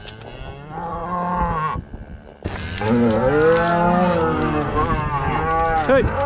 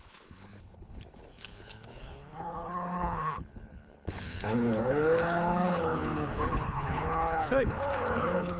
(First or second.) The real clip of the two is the first